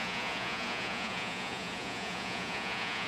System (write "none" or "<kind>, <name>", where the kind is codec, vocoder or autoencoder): vocoder, Vocos